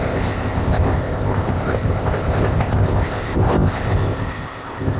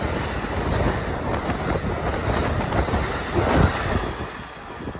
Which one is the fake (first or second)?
first